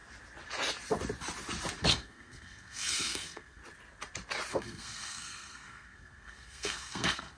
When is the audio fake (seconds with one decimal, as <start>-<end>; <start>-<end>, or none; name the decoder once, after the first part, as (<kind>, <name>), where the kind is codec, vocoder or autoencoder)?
1.9-3.6 (codec, SNAC); 4.5-7.4